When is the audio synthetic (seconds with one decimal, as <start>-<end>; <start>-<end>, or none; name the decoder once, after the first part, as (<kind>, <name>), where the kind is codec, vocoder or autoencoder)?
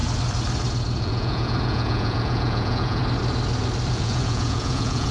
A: 1.0-3.0 (vocoder, Vocos); 3.9-5.1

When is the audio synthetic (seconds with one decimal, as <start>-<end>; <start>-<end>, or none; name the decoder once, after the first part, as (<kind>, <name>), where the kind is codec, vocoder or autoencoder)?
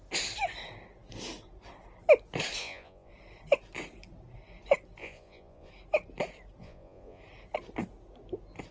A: 2.6-3.1 (vocoder, Vocos); 5.0-5.7; 6.6-7.2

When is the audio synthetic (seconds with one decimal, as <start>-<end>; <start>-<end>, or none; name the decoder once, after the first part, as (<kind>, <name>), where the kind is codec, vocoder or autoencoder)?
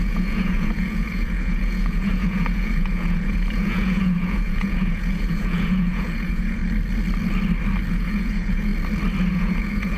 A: 0.0-6.6 (vocoder, Vocos); 7.9-8.7; 9.3-10.0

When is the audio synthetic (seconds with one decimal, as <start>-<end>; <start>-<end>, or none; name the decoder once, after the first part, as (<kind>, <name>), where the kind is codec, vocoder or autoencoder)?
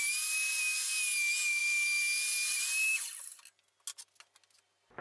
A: none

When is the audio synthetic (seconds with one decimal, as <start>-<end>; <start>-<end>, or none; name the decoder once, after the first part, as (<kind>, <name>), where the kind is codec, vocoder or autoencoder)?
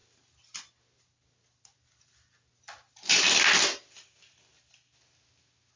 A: none